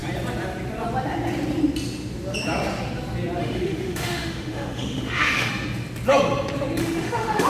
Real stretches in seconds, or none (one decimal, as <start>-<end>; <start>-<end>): 0.0-3.4; 5.5-6.8